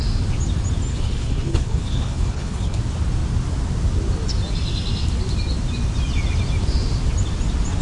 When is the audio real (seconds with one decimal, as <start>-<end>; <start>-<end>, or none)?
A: 0.0-0.9; 2.8-7.8